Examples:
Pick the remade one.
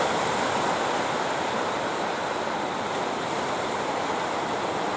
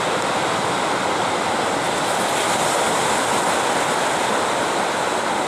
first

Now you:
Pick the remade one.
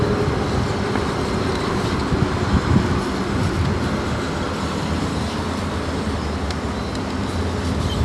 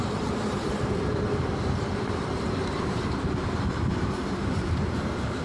second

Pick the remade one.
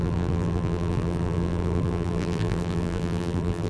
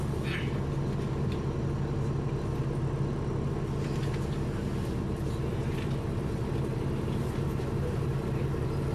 first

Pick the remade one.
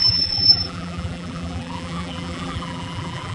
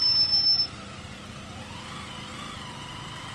first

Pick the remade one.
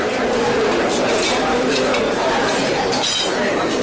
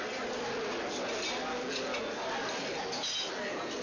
first